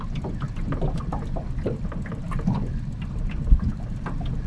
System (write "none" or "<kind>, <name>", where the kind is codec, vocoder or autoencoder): none